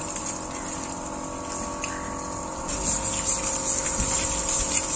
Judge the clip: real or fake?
real